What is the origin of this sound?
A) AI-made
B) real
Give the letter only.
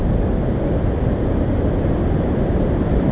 B